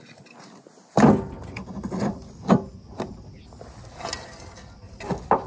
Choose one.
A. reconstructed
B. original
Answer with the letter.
B